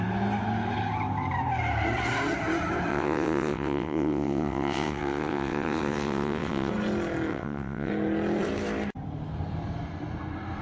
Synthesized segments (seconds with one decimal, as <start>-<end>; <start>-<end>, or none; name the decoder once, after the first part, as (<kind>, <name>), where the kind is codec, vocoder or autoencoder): 2.9-6.7 (vocoder, WaveNeXt); 7.3-7.9